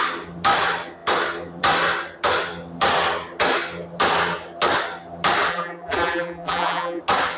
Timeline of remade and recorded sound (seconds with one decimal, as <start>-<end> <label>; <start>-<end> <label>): 0.0-5.5 recorded; 5.5-7.0 remade; 7.0-7.4 recorded